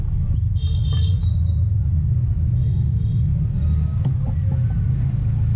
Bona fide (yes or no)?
yes